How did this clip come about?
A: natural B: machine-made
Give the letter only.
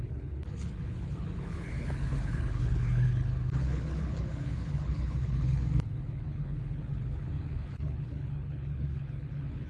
B